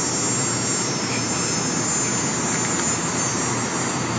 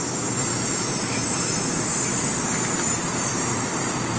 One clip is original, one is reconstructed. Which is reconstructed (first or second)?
second